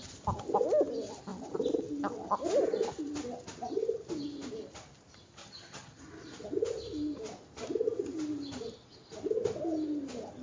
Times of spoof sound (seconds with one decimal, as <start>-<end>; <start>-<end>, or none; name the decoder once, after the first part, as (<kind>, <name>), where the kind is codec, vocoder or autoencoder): 5.4-6.0 (vocoder, HiFi-GAN)